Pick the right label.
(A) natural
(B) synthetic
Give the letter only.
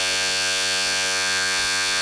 B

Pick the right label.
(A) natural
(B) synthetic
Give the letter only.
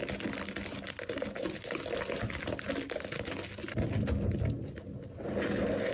A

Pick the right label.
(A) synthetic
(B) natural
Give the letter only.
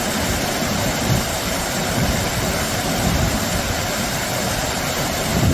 A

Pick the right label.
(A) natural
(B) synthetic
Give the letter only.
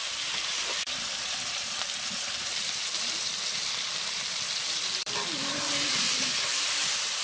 B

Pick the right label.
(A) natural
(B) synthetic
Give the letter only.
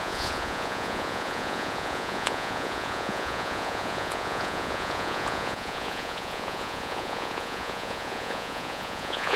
B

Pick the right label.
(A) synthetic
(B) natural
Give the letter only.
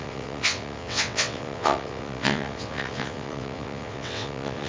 A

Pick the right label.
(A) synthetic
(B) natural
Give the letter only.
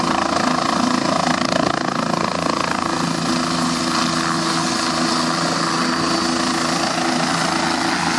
B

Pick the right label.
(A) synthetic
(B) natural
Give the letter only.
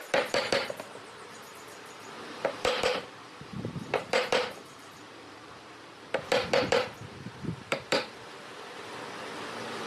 A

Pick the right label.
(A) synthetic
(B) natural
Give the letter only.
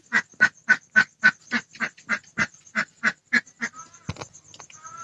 B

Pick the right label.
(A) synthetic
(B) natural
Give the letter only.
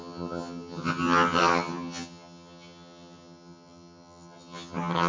A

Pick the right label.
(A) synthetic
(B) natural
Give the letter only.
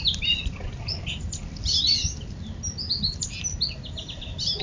B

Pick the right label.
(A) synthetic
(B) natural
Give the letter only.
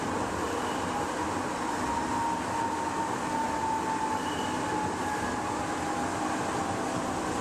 B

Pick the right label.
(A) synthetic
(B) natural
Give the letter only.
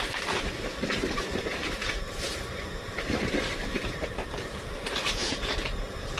A